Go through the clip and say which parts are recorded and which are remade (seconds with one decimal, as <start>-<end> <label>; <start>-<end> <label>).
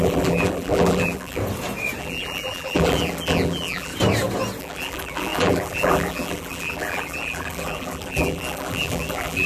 0.0-1.4 remade; 1.4-2.0 recorded; 2.0-3.9 remade; 3.9-4.6 recorded; 4.6-9.5 remade